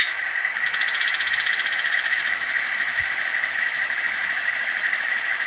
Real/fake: fake